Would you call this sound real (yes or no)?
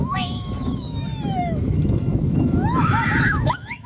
no